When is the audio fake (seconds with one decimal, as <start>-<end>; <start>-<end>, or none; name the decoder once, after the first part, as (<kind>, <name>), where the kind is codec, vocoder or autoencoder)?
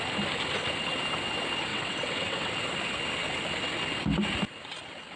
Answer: 1.7-2.5 (vocoder, WaveNeXt)